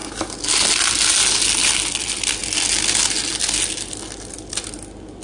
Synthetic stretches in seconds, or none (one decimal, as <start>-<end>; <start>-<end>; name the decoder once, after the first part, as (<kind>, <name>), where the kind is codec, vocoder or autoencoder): none